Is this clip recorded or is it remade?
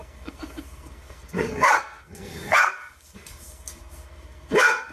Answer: remade